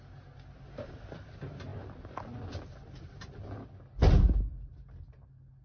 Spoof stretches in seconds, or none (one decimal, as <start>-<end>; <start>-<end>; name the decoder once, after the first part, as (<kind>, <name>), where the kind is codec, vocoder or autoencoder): none